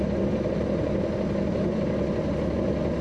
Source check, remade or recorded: recorded